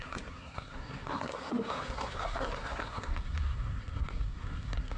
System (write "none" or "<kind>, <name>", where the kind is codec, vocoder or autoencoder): codec, SNAC